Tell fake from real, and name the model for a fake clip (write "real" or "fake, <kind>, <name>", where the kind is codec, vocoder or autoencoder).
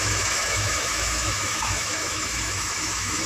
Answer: fake, autoencoder, DAC-VAE